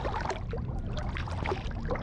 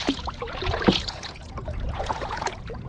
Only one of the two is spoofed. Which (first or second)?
second